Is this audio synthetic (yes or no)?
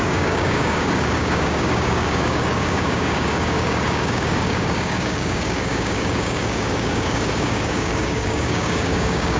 yes